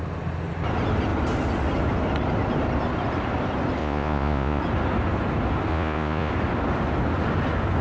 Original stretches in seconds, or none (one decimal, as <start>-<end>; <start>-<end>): 0.0-3.8; 4.6-5.7; 6.3-7.8